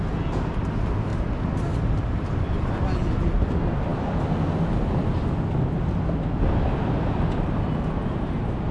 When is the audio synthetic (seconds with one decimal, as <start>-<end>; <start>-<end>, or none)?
1.1-2.6